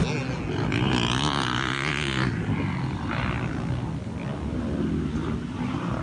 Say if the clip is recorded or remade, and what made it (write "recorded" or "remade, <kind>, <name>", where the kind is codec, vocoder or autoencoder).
recorded